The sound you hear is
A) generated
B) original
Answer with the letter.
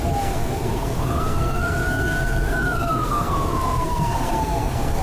A